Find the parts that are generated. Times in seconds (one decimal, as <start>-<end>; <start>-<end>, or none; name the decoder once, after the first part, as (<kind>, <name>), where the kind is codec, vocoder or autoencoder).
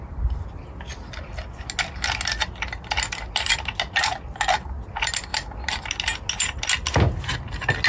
none